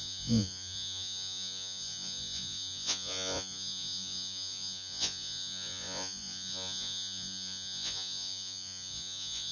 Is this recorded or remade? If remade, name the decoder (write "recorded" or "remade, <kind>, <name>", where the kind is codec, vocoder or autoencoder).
remade, vocoder, Vocos